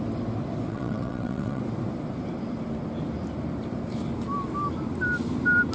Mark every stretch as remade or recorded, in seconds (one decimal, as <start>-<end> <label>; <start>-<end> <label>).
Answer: 0.0-0.7 recorded; 0.7-1.6 remade; 1.6-5.7 recorded